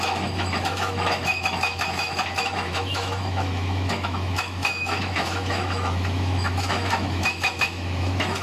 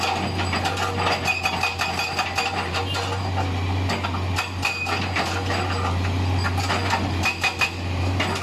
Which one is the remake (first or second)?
first